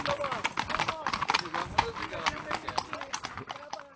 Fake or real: real